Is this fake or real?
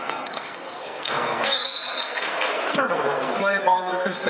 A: fake